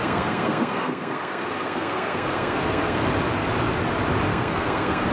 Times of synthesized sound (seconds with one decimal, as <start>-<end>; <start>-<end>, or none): 0.0-3.1; 4.3-5.1